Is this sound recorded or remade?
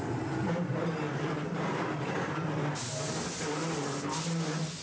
recorded